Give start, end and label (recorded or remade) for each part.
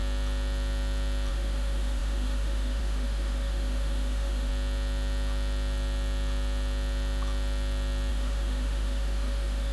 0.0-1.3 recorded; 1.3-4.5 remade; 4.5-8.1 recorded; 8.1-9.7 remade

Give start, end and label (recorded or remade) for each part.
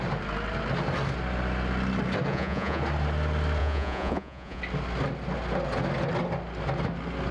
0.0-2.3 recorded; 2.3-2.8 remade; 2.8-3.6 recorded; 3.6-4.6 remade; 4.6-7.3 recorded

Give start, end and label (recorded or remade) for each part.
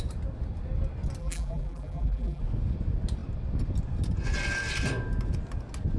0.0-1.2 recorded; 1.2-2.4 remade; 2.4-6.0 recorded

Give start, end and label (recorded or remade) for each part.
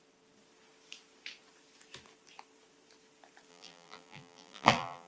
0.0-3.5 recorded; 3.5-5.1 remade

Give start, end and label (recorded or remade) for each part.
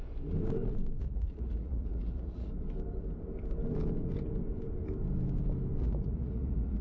0.0-1.0 recorded; 1.0-2.5 remade; 2.5-5.8 recorded; 5.8-6.8 remade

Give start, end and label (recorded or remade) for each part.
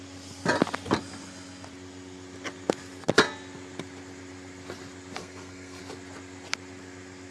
0.0-5.2 recorded; 5.2-5.8 remade; 5.8-7.3 recorded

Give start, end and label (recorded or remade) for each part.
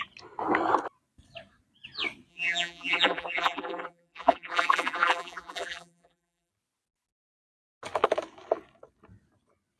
0.0-2.3 recorded; 2.3-6.5 remade; 6.5-9.8 recorded